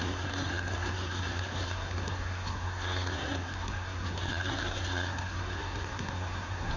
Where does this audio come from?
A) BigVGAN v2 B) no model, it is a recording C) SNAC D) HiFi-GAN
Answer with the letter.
C